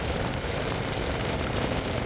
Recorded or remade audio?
remade